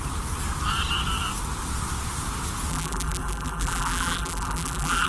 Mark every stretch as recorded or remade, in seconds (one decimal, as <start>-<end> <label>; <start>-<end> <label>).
0.0-2.7 recorded; 2.7-5.1 remade